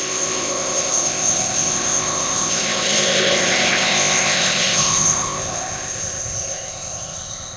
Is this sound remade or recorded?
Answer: remade